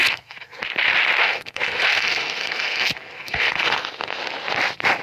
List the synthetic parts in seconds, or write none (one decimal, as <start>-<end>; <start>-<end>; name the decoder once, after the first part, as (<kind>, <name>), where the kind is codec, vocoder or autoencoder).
0.0-0.6 (codec, SNAC); 1.2-4.2